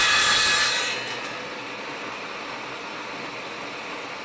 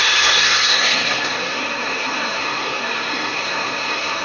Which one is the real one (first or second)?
first